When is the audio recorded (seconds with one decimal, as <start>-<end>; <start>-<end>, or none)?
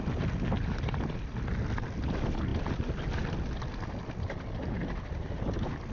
0.0-5.9